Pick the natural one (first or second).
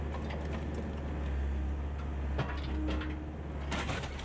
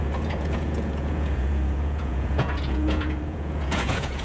first